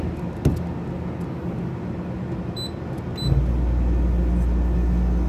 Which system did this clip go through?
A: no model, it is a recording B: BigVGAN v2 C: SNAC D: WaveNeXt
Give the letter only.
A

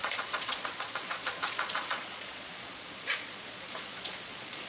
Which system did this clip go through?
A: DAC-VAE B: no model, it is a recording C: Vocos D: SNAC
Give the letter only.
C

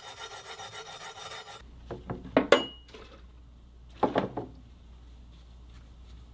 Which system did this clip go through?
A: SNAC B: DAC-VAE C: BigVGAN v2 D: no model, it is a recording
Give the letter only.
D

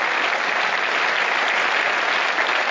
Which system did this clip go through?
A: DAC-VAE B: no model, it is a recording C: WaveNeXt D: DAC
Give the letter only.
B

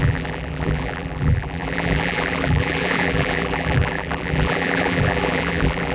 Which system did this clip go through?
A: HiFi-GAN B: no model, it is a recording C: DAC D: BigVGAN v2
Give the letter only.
D